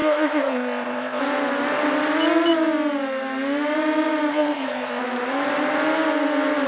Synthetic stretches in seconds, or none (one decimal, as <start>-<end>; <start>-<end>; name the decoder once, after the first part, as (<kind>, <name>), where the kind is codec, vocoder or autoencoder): 0.0-1.2 (codec, ZipCodec); 4.3-5.0